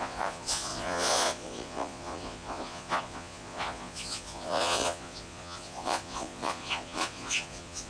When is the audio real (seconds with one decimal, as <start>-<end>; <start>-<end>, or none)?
none